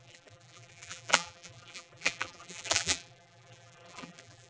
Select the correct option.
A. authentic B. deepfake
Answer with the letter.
B